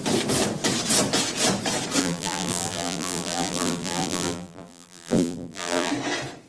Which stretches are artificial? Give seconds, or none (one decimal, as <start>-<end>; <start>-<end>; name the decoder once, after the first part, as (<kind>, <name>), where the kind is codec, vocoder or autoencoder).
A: 2.0-5.9 (vocoder, BigVGAN v2)